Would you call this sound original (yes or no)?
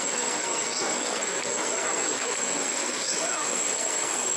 no